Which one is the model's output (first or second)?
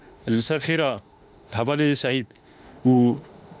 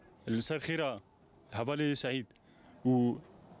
first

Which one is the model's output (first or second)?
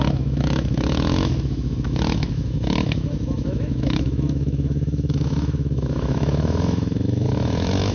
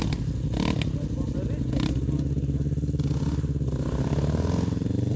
first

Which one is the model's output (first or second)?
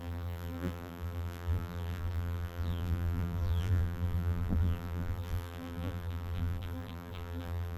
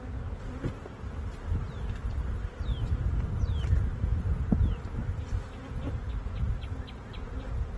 first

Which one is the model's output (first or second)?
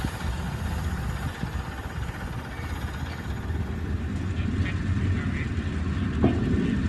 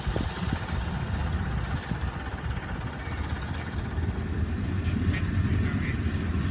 second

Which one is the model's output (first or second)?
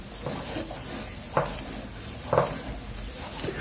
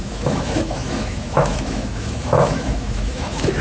second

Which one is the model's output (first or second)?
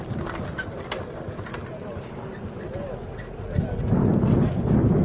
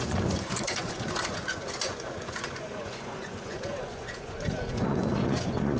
second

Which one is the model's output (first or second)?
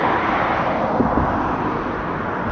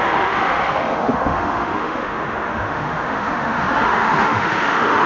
second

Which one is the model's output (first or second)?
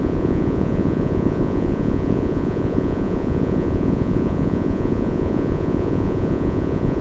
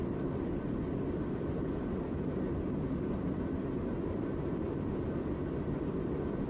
first